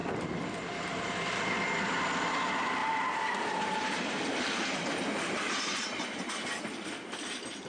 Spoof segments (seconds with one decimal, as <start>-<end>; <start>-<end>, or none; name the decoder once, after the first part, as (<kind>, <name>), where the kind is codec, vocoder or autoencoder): 2.8-6.3 (vocoder, BigVGAN v2)